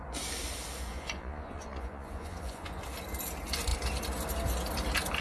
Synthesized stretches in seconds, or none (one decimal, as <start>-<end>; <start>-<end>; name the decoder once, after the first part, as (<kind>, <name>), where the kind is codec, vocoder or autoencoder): 0.9-2.8 (vocoder, Vocos)